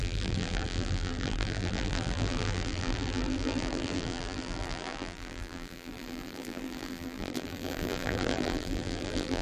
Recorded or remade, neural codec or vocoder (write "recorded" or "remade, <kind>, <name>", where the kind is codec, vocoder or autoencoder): remade, vocoder, BigVGAN v2